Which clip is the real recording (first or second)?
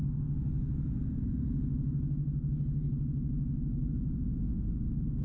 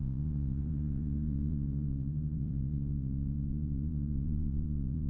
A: first